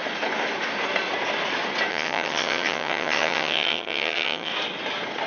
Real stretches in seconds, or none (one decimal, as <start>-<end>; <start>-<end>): 0.0-1.9; 4.5-5.3